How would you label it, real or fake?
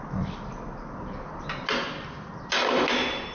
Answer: real